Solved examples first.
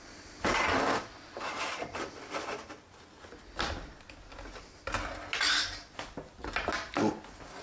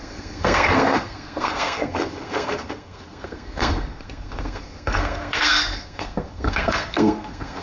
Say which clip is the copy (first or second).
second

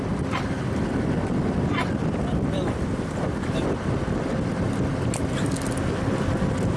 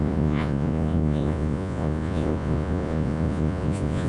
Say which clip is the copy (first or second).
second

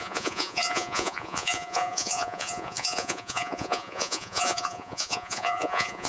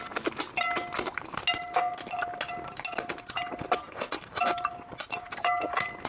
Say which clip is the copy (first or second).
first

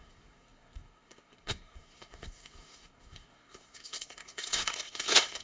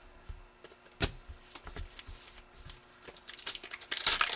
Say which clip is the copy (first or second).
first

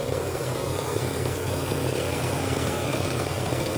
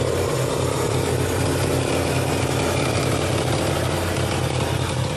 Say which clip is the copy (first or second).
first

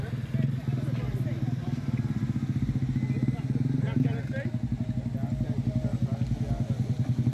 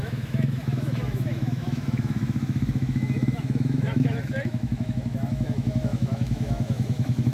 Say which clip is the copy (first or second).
second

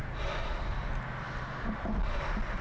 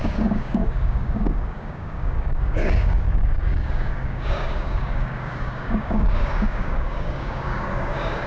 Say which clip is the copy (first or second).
second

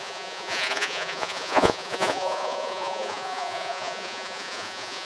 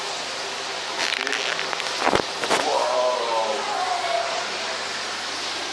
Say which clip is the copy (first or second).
first